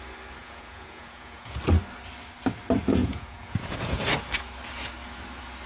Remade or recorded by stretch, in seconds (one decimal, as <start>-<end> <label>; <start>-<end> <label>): 0.0-0.4 recorded; 0.4-1.6 remade; 1.6-3.0 recorded; 3.0-4.0 remade; 4.0-5.7 recorded